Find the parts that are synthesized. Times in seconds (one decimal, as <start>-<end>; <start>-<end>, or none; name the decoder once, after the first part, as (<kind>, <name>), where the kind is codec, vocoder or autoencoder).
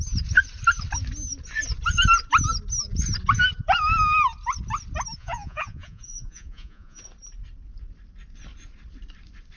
5.2-7.0 (vocoder, Vocos)